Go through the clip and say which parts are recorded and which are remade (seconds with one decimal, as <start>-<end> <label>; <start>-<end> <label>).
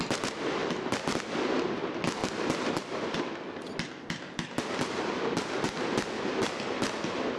0.0-0.6 recorded; 0.6-1.8 remade; 1.8-2.2 recorded; 2.2-6.6 remade; 6.6-7.4 recorded